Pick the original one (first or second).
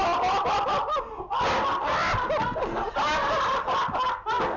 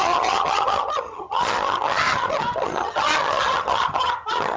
first